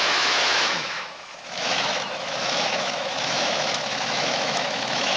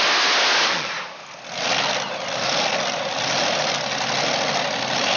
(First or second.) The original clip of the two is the second